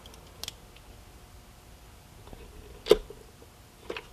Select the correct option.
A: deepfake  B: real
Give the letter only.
B